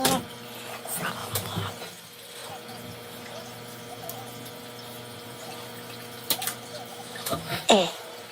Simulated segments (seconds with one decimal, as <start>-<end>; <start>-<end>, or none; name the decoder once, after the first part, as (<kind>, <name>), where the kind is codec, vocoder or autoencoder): 1.2-1.7 (autoencoder, DAC-VAE); 6.9-7.6